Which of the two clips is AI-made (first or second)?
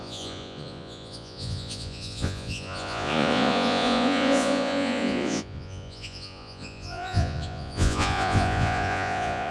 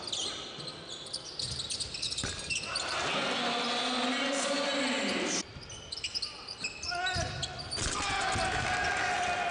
first